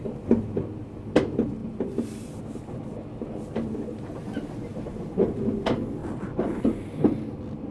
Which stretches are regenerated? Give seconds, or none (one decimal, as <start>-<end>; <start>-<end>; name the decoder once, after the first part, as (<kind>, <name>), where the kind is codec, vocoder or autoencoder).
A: 1.6-2.4 (vocoder, BigVGAN v2); 4.7-5.4; 6.0-6.6

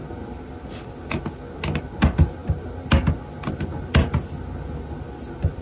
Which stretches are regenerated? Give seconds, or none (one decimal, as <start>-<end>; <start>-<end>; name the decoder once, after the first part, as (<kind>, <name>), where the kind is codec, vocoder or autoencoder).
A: none

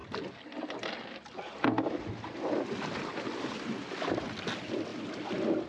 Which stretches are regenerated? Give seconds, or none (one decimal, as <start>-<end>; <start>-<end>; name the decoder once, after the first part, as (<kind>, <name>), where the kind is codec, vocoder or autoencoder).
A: none

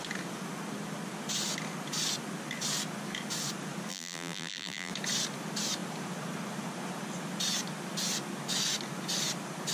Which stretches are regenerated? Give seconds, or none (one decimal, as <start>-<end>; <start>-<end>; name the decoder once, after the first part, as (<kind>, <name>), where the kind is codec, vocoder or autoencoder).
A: 3.9-4.9 (vocoder, BigVGAN v2)